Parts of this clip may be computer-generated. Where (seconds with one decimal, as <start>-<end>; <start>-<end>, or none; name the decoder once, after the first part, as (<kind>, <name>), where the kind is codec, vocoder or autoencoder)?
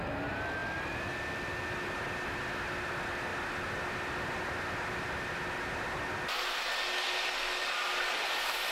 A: none